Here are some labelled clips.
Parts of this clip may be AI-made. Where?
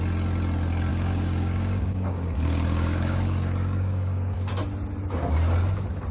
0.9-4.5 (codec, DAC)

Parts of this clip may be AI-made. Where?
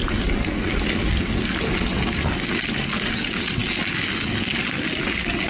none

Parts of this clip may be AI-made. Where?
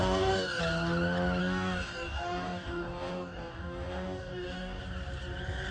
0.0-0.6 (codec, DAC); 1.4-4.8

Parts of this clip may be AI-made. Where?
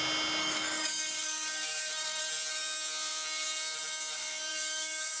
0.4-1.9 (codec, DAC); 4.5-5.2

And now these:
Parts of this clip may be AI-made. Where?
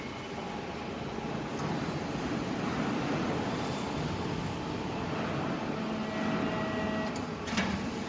none